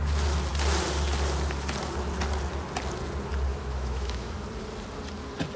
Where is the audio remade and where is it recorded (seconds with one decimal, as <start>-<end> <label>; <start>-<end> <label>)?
0.0-3.5 recorded; 3.5-4.3 remade; 4.3-5.6 recorded